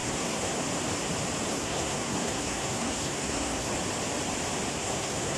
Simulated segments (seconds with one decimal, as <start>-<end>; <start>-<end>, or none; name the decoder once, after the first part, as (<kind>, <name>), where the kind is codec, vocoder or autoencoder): 0.0-0.6 (codec, SNAC); 1.5-3.7; 4.7-5.4